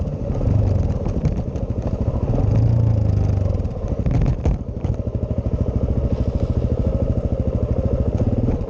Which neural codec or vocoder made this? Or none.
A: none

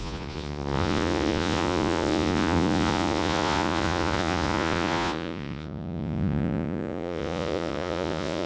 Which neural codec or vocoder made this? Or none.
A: vocoder, Vocos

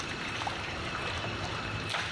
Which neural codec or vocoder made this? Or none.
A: none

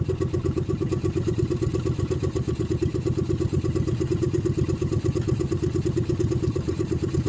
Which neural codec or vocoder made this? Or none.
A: none